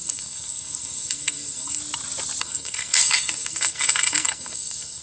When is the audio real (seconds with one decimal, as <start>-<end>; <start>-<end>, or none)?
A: 1.8-2.4